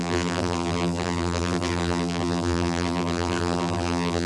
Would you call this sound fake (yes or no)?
yes